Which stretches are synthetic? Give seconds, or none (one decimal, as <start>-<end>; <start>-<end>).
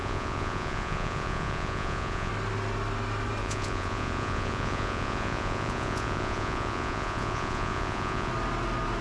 0.0-2.3; 3.4-8.3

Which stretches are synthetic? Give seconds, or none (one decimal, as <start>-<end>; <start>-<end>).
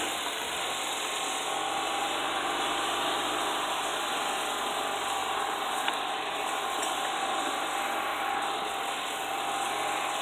5.2-7.0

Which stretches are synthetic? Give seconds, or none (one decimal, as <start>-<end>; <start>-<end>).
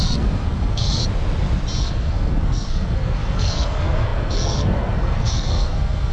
0.0-1.0; 1.8-6.1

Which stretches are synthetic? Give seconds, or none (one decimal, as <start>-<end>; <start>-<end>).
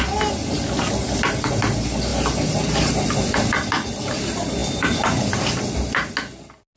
none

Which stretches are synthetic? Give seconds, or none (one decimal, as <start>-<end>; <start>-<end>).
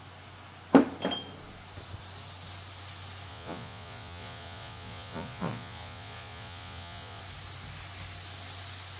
3.3-7.2